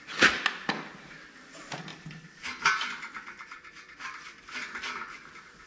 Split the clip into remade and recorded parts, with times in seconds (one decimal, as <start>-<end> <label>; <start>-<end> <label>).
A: 0.0-1.9 recorded; 1.9-4.4 remade; 4.4-5.7 recorded